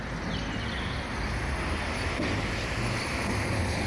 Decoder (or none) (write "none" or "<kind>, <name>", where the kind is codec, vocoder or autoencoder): none